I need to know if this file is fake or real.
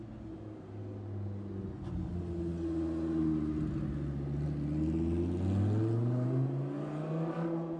real